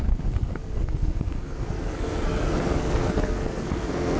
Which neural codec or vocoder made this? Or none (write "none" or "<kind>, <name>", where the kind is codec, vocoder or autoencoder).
codec, SNAC